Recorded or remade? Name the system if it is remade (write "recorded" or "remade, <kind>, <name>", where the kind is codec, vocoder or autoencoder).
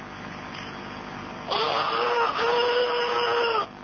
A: recorded